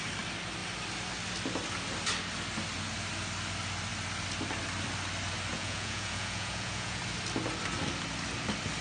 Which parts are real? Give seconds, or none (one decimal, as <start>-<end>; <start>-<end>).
0.0-5.5; 7.0-8.8